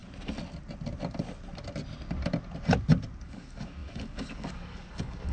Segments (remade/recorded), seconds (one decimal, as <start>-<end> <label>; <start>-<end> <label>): 0.0-3.2 recorded; 3.2-5.3 remade